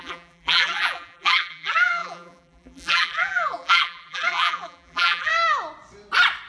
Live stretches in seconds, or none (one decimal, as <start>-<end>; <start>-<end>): 5.3-6.5